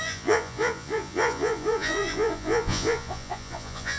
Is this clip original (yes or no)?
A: no